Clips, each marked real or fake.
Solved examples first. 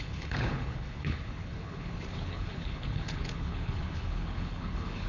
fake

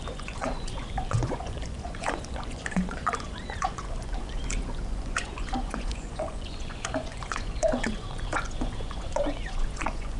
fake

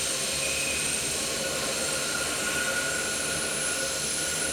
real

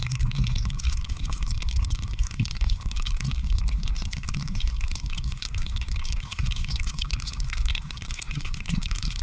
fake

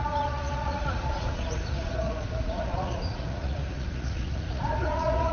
fake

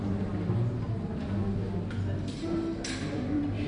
real